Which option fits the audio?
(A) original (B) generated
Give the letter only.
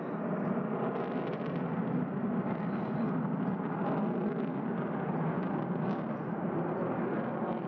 A